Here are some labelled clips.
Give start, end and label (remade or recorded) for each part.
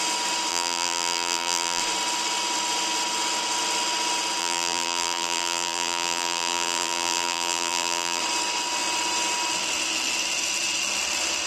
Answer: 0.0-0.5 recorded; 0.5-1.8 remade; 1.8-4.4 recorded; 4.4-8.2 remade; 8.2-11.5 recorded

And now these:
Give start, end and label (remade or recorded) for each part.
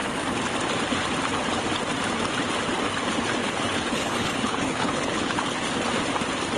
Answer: 0.0-3.4 recorded; 3.4-5.4 remade; 5.4-6.6 recorded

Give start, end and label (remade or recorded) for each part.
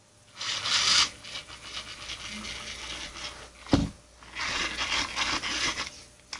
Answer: 0.0-6.4 recorded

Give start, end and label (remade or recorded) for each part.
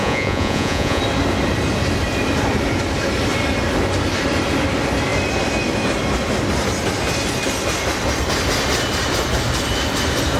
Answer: 0.0-1.0 remade; 1.0-10.4 recorded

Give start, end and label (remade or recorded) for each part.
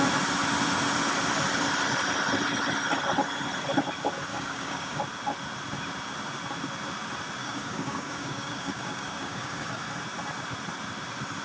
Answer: 0.0-4.3 recorded; 4.3-5.0 remade; 5.0-7.4 recorded; 7.4-9.8 remade; 9.8-11.4 recorded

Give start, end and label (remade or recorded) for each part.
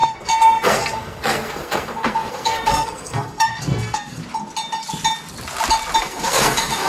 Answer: 0.0-4.2 remade; 4.2-6.0 recorded; 6.0-6.9 remade